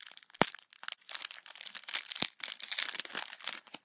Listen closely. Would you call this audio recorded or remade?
recorded